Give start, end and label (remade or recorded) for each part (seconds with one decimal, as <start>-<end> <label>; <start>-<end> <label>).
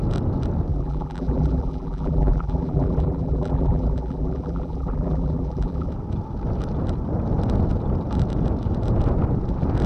0.0-0.7 recorded; 0.7-5.9 remade; 5.9-9.9 recorded